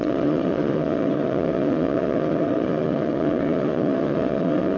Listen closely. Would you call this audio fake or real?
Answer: fake